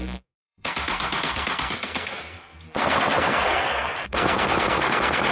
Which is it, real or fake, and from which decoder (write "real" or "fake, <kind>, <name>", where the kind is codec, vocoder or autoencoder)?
fake, codec, SNAC